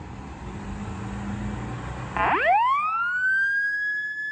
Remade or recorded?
recorded